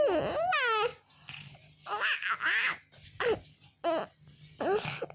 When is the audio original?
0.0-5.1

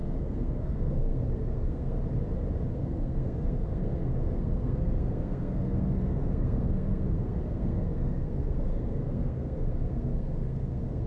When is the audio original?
2.0-2.7

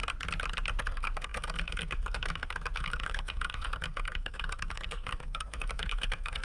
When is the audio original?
0.0-0.8

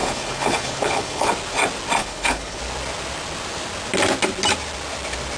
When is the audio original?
1.3-2.0; 2.6-5.4